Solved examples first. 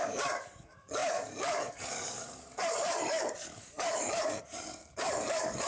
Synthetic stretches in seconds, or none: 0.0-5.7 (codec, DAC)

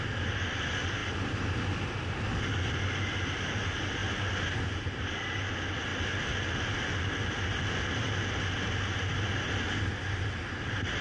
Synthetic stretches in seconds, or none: none

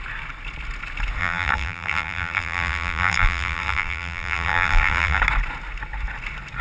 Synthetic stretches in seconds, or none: 1.2-5.2 (vocoder, BigVGAN v2)

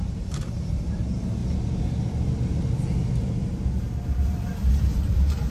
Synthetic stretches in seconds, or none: 0.0-1.4 (vocoder, BigVGAN v2); 4.7-5.5